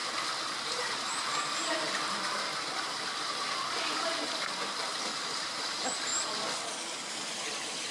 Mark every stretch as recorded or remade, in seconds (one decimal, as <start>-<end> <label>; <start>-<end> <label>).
0.0-6.1 remade; 6.1-7.1 recorded; 7.1-7.9 remade